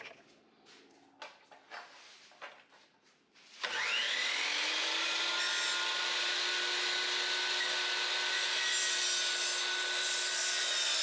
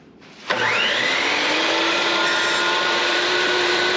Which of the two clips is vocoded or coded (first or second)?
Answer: second